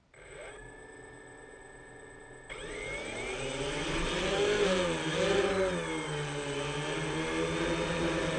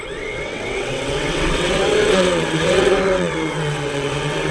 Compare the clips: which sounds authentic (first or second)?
first